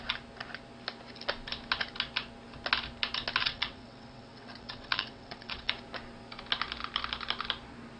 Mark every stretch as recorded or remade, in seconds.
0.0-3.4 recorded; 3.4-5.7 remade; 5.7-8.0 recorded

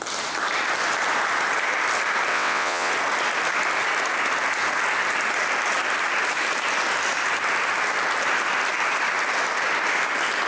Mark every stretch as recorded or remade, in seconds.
0.0-2.3 recorded; 2.3-2.9 remade; 2.9-10.5 recorded

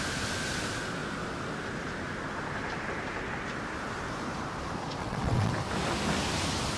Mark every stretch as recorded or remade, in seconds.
0.0-5.0 recorded; 5.0-5.5 remade; 5.5-6.8 recorded

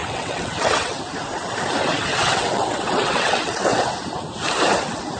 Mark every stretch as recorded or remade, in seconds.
0.0-1.0 remade; 1.0-2.1 recorded; 2.1-3.8 remade; 3.8-5.2 recorded

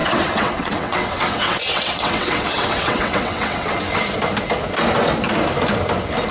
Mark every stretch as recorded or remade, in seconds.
0.0-3.7 remade; 3.7-6.3 recorded